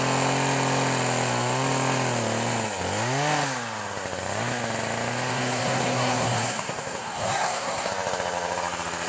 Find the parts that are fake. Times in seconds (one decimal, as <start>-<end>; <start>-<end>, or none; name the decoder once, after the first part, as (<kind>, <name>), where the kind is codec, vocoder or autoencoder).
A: 5.3-7.9 (codec, SNAC)